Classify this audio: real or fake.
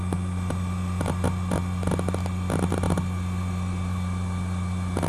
real